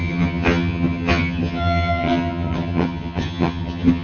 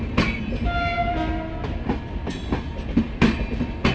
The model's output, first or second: first